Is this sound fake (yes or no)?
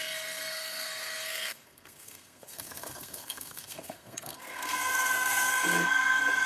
yes